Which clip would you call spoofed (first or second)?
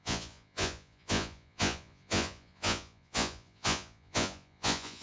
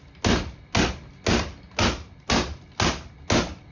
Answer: first